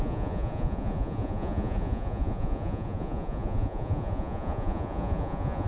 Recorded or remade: remade